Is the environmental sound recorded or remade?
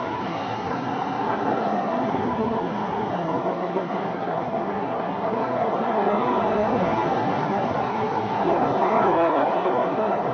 remade